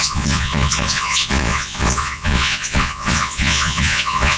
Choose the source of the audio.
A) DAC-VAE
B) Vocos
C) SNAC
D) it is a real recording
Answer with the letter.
B